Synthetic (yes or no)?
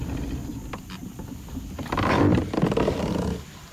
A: no